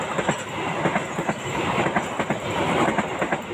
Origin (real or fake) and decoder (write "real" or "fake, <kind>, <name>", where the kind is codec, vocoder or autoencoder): real